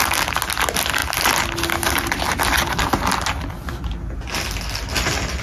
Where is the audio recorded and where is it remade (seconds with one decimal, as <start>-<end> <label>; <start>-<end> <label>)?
0.0-5.4 recorded